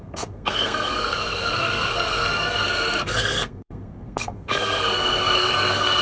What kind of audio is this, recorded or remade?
remade